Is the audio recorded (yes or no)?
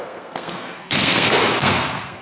no